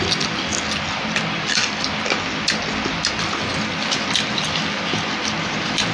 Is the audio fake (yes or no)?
no